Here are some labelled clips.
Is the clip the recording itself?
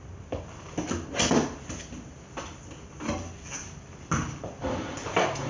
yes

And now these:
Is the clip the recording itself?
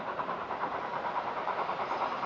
no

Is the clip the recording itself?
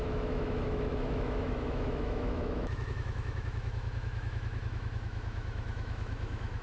no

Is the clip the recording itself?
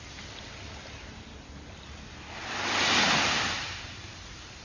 yes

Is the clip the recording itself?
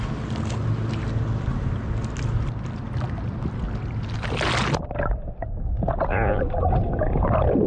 yes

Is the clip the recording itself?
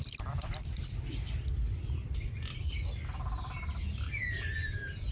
yes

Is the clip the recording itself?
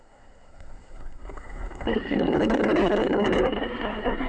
no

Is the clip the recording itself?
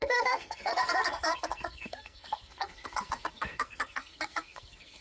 no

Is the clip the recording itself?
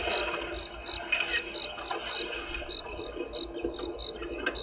yes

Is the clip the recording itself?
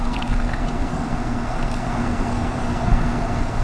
no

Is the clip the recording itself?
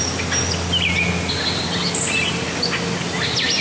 yes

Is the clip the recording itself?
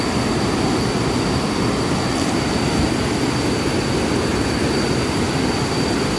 yes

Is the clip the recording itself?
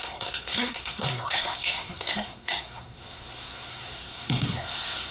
no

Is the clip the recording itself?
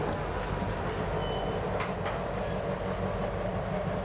yes